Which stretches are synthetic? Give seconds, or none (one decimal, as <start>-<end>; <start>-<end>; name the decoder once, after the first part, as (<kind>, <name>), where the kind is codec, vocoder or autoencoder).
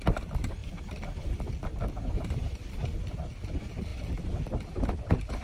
0.0-0.6 (vocoder, BigVGAN v2); 2.0-3.9; 4.9-5.4